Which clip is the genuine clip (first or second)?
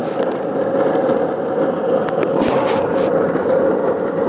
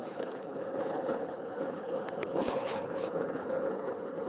first